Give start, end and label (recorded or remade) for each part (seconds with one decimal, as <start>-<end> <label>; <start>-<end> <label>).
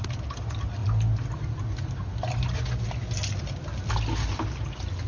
0.0-5.1 recorded